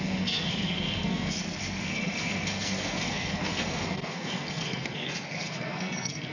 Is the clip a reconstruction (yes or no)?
yes